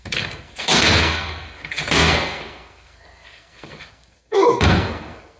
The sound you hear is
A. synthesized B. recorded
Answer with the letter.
A